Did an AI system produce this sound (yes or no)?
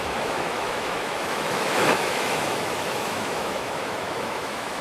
yes